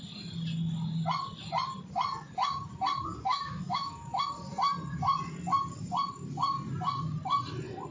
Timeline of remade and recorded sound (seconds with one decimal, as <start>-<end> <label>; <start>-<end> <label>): 0.0-3.3 recorded; 3.3-4.2 remade; 4.2-7.9 recorded